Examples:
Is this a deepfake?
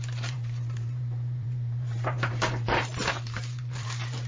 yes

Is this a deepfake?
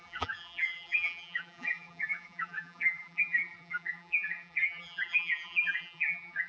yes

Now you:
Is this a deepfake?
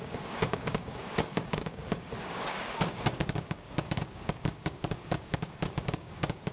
yes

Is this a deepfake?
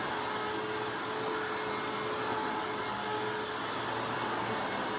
no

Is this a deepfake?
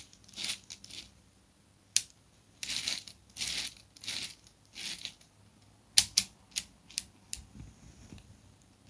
no